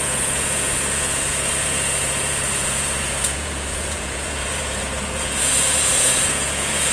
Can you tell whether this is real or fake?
fake